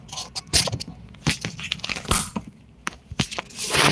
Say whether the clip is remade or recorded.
recorded